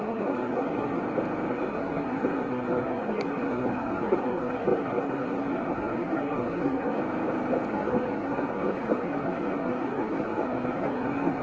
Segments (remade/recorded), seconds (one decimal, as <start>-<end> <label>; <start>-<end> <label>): 0.0-1.0 remade; 1.0-1.5 recorded; 1.5-7.0 remade; 7.0-7.7 recorded; 7.7-11.4 remade